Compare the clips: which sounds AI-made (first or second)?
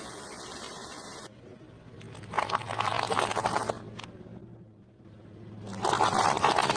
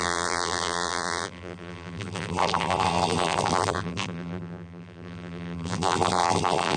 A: second